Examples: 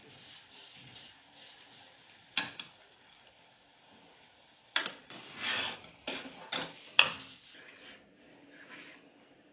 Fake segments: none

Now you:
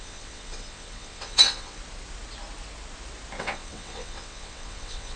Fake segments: 0.0-1.8 (vocoder, WaveNeXt); 3.4-5.2

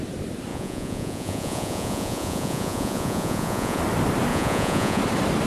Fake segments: 0.5-3.8 (vocoder, Vocos); 4.3-5.0